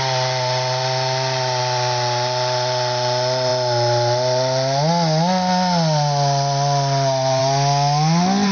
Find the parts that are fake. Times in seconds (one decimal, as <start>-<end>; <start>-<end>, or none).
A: none